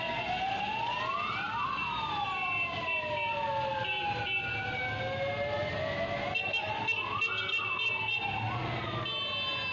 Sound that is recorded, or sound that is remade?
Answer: recorded